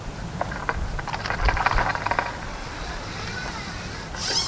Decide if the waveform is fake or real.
real